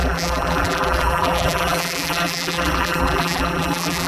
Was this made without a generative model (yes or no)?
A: no